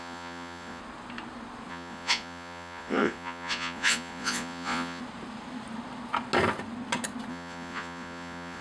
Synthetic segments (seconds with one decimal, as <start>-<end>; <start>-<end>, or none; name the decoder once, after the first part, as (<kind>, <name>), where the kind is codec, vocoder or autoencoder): 0.0-0.8 (vocoder, Vocos); 1.7-5.0; 7.3-8.6